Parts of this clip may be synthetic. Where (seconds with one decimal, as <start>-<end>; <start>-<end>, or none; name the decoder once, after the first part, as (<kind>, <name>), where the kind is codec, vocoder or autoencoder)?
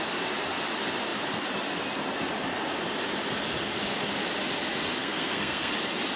5.0-5.7 (codec, SNAC)